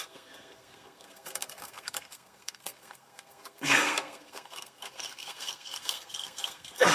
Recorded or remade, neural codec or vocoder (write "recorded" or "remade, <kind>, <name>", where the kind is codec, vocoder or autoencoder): remade, codec, SNAC